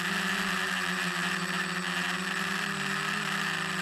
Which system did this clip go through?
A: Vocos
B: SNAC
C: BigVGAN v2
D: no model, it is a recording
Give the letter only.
D